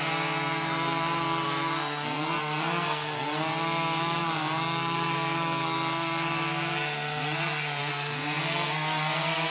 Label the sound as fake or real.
fake